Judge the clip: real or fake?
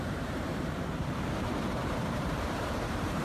fake